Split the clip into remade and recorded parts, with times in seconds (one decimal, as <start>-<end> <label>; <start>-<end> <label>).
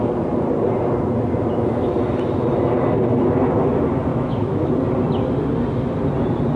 0.0-4.1 recorded; 4.1-4.7 remade; 4.7-6.6 recorded